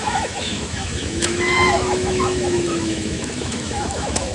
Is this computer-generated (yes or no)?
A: yes